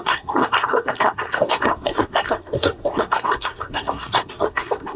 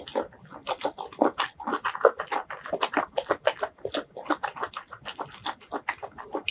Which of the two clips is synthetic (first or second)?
first